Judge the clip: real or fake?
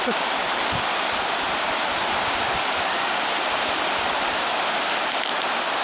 real